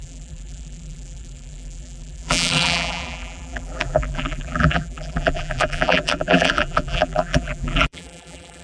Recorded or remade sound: remade